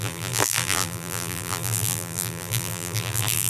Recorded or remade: remade